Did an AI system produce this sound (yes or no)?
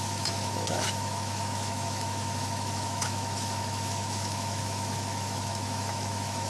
yes